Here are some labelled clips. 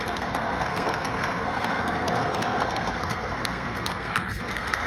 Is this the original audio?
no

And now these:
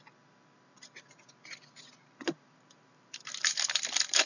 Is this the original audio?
yes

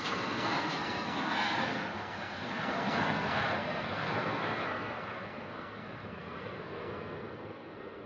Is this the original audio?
no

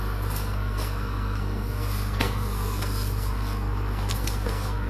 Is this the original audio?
no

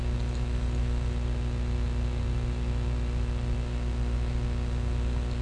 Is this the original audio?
yes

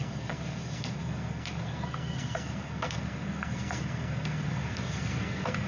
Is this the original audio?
no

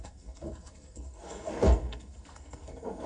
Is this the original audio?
no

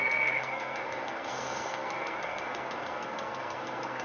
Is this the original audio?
no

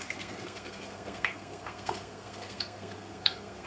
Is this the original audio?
no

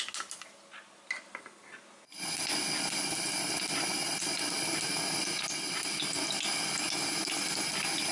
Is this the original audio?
yes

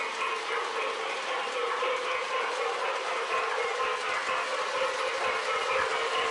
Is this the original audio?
yes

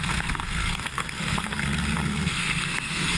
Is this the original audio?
no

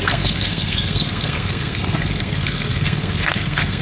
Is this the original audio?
no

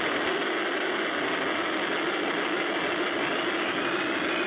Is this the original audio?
yes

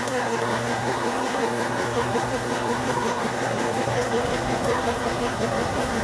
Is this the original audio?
no